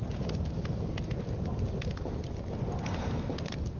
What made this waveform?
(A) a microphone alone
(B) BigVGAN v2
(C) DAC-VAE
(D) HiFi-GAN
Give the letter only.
A